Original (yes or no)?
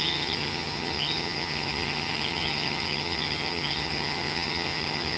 no